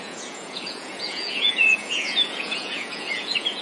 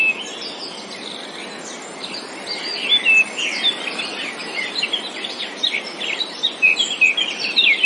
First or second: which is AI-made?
first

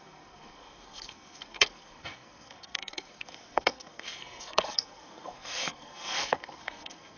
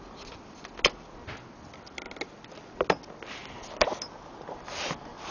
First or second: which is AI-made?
first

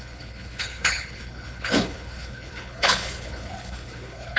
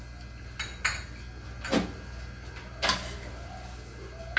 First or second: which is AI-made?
first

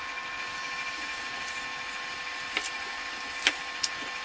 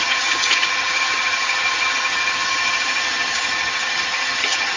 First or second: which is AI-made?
second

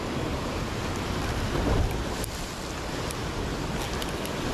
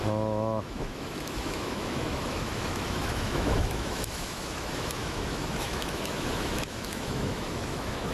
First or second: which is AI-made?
second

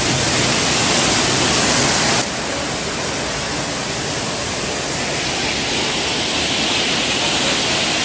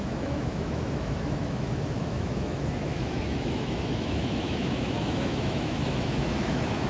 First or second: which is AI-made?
second